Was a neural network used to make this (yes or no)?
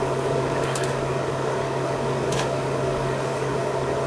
yes